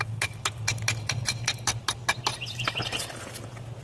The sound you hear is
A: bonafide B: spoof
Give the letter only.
A